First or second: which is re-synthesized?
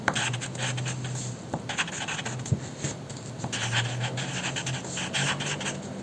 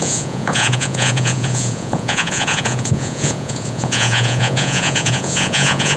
second